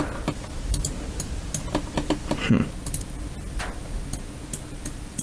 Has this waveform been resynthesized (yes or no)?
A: no